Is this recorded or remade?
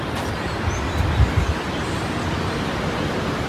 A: recorded